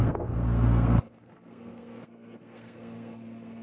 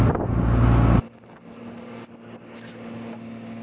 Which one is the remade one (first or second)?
first